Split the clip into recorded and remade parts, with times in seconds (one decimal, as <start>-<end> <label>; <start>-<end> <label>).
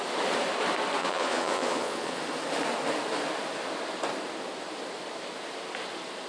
0.0-1.0 recorded; 1.0-2.2 remade; 2.2-6.3 recorded